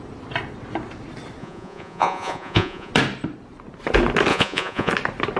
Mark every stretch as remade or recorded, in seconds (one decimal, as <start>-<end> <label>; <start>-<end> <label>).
0.0-1.4 recorded; 1.4-2.9 remade; 2.9-4.3 recorded; 4.3-4.9 remade; 4.9-5.4 recorded